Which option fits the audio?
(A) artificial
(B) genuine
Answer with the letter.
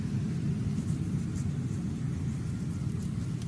B